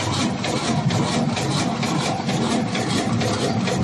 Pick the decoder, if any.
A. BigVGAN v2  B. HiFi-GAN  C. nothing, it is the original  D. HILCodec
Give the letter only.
C